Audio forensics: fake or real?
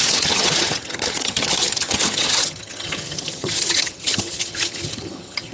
fake